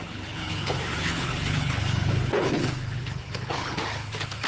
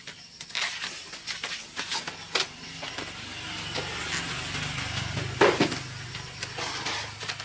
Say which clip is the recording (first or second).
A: second